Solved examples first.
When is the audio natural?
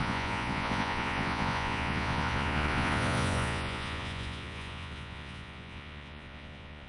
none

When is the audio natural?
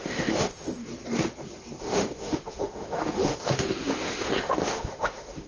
0.9-1.8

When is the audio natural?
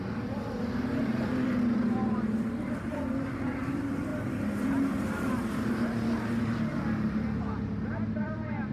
4.1-8.2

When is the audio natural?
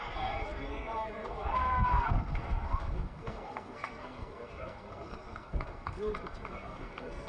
none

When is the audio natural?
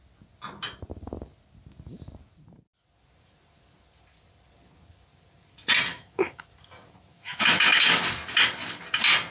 0.0-5.9; 6.4-7.1; 8.0-9.3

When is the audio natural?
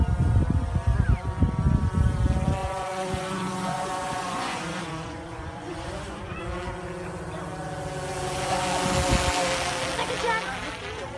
0.0-2.6; 6.4-11.2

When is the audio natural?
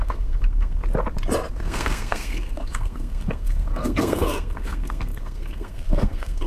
0.8-1.5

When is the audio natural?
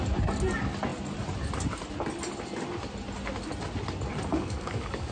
0.0-4.3